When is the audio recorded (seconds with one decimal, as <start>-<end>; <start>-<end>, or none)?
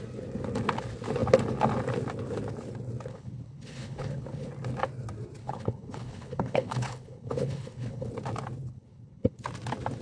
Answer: 0.0-3.1; 4.5-5.4; 8.1-8.7; 9.4-10.0